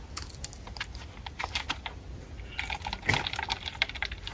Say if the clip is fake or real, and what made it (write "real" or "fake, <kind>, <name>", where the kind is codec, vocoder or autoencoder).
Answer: real